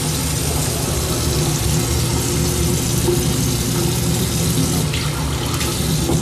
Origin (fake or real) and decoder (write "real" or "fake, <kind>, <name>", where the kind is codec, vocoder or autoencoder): real